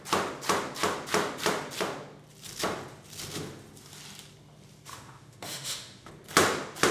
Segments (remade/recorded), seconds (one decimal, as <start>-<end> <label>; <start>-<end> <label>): 0.0-4.9 recorded; 4.9-6.1 remade; 6.1-6.9 recorded